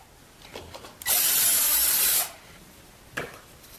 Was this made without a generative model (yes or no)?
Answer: yes